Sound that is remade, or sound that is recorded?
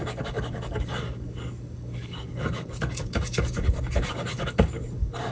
remade